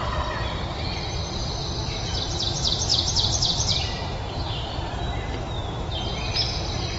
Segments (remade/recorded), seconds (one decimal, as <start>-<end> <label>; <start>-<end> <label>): 0.0-6.1 remade; 6.1-7.0 recorded